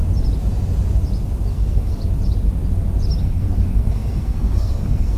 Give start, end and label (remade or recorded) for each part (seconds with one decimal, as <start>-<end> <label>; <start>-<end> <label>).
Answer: 0.0-1.5 recorded; 1.5-2.0 remade; 2.0-3.2 recorded; 3.2-5.2 remade